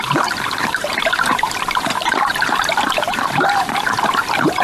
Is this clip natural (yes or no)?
no